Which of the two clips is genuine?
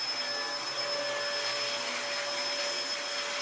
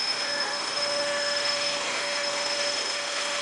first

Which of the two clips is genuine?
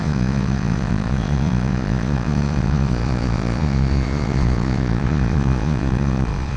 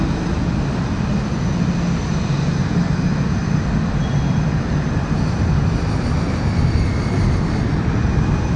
second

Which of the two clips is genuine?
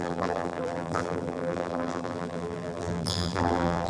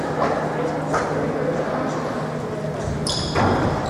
second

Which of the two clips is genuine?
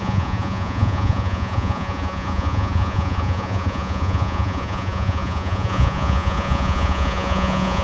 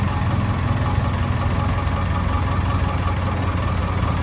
second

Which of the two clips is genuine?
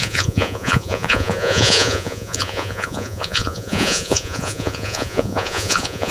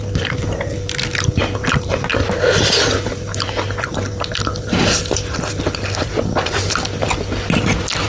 second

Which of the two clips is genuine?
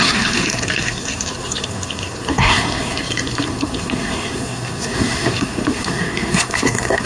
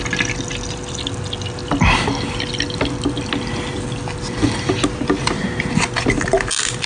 second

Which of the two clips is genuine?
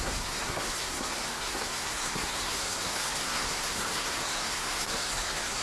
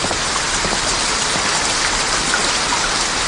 second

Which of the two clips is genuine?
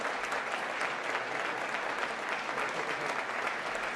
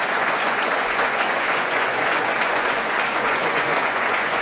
first